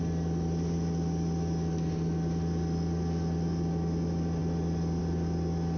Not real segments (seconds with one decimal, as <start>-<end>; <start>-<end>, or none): none